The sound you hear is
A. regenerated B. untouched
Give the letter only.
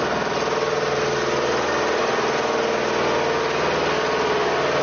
B